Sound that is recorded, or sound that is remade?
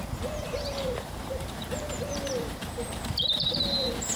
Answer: remade